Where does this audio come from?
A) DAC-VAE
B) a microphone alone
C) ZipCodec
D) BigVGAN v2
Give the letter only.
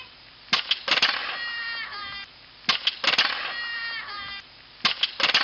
B